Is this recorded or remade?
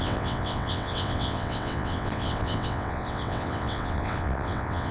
remade